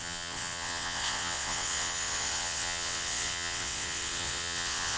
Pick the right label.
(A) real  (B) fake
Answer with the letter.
B